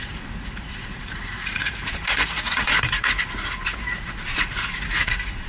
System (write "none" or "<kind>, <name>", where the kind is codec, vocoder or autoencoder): vocoder, Vocos